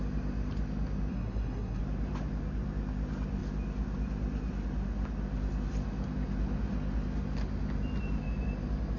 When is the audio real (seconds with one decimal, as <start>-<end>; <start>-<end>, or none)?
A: 0.0-1.1; 1.8-9.0